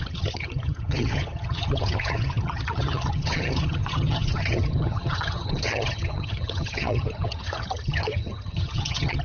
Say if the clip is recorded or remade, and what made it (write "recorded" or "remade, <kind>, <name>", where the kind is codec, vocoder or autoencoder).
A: remade, vocoder, HiFi-GAN